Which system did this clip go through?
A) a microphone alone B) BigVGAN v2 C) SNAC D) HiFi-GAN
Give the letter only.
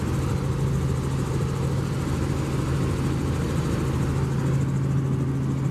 A